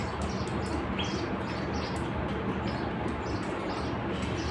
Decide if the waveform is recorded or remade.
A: recorded